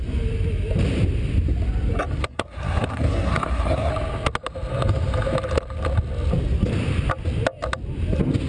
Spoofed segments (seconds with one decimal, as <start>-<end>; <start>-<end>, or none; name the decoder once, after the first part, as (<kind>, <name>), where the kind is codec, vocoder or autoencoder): 2.2-3.9 (codec, SNAC)